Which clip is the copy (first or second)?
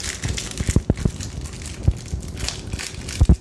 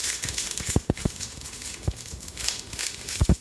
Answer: second